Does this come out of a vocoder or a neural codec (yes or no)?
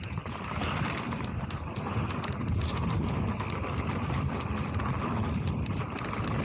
no